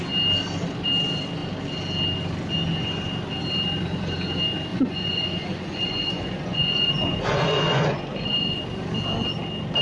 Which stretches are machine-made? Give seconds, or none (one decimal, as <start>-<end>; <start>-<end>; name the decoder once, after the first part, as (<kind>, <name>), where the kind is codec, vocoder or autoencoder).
4.7-8.6 (vocoder, Vocos)